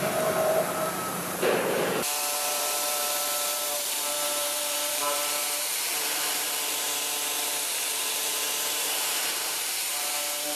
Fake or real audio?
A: fake